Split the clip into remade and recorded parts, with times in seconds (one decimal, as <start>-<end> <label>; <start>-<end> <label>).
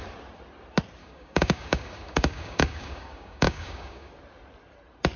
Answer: 0.0-1.0 recorded; 1.0-4.1 remade; 4.1-5.2 recorded